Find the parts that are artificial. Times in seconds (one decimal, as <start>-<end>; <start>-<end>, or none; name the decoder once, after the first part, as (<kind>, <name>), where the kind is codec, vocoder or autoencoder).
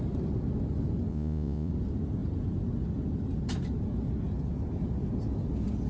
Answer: 1.1-1.7 (vocoder, Vocos)